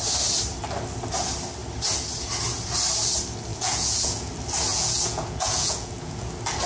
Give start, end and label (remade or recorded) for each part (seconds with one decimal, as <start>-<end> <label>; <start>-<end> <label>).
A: 0.0-3.5 recorded; 3.5-4.3 remade; 4.3-4.7 recorded; 4.7-6.3 remade; 6.3-6.7 recorded